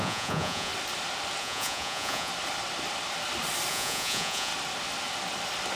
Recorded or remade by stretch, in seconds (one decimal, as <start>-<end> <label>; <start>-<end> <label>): 0.0-0.7 remade; 0.7-1.4 recorded; 1.4-2.3 remade; 2.3-3.7 recorded; 3.7-4.5 remade; 4.5-5.8 recorded